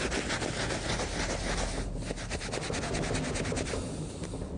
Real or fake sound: real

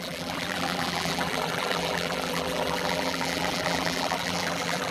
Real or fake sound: fake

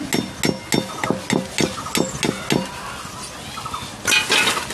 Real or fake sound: real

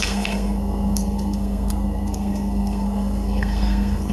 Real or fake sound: fake